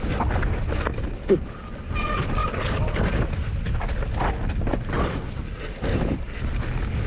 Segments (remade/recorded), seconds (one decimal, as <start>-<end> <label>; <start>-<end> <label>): 0.0-7.1 recorded